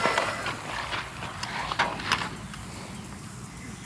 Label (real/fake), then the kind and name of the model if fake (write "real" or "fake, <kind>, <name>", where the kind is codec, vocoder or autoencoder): real